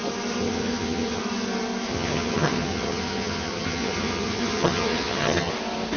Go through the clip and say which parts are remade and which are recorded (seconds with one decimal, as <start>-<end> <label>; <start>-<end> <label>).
0.0-0.4 recorded; 0.4-1.2 remade; 1.2-1.9 recorded; 1.9-5.5 remade; 5.5-6.0 recorded